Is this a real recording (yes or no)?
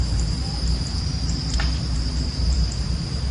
no